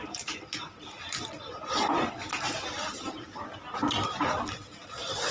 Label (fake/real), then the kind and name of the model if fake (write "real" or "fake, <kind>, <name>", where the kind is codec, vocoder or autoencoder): real